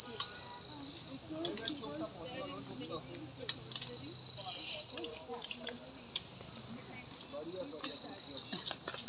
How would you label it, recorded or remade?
recorded